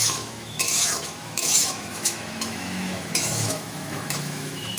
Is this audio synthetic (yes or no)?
yes